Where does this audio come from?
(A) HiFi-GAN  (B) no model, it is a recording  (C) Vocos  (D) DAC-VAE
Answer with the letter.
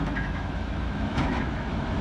D